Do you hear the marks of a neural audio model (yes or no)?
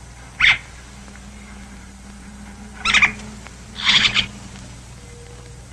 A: no